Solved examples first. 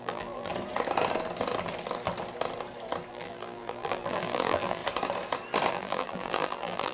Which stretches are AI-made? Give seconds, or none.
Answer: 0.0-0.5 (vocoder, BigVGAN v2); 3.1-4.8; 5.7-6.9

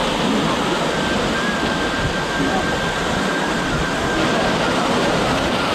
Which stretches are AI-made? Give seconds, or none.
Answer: 1.8-3.9 (vocoder, BigVGAN v2); 4.8-5.7

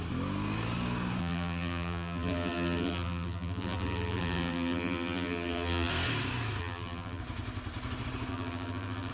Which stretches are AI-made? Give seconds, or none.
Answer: 1.2-5.9 (vocoder, BigVGAN v2); 6.6-7.2; 8.3-9.1

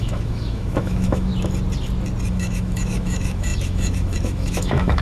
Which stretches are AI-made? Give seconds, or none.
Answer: 0.0-1.3 (autoencoder, DAC-VAE); 2.3-5.0

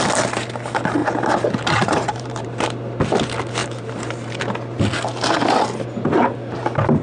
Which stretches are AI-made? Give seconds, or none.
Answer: 1.0-2.7 (vocoder, BigVGAN v2); 3.6-4.3

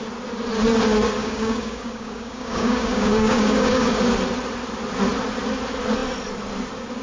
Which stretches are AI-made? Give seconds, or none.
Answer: 1.2-4.0 (codec, DAC)